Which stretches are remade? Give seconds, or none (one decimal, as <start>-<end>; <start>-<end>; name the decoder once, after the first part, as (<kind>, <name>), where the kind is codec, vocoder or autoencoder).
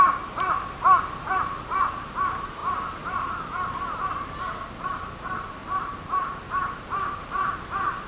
5.6-8.1 (vocoder, BigVGAN v2)